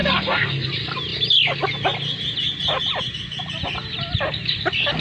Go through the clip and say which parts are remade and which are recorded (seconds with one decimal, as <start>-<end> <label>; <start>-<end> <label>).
0.0-0.7 remade; 0.7-5.0 recorded